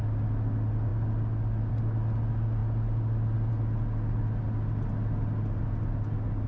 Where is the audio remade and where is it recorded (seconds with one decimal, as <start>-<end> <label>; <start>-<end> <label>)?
0.0-6.5 recorded